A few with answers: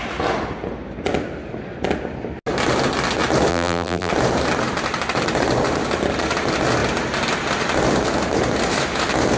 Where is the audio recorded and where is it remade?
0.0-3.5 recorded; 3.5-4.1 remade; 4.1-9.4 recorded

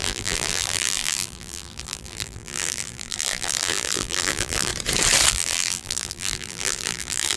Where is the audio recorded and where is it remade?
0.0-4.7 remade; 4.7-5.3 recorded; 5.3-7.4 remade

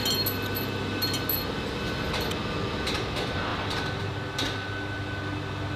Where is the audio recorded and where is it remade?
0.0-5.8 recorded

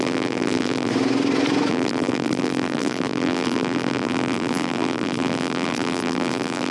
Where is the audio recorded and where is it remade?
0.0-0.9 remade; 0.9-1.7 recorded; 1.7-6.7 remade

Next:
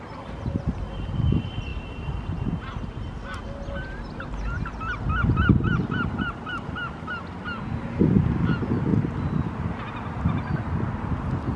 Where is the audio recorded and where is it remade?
0.0-11.6 recorded

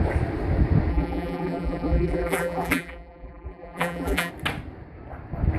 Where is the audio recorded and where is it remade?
0.0-0.9 recorded; 0.9-4.3 remade; 4.3-5.6 recorded